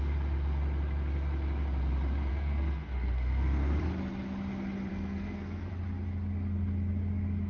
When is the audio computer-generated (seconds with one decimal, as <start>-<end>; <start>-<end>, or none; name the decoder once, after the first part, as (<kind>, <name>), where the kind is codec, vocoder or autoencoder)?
2.3-3.8 (codec, SNAC); 4.9-5.7